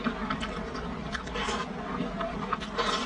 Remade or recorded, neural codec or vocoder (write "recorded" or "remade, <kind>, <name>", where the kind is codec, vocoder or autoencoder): recorded